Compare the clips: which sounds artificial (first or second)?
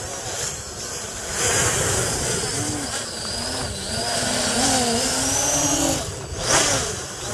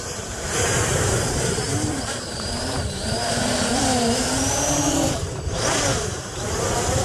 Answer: second